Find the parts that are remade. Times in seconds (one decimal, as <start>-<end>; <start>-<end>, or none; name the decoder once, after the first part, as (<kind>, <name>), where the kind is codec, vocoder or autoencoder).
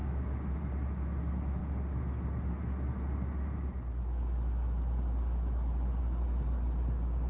0.0-0.6 (autoencoder, DAC-VAE)